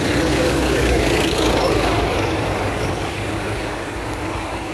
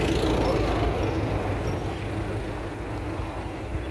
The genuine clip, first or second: second